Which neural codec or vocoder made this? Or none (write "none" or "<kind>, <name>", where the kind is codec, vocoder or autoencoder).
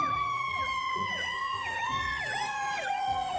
vocoder, Vocos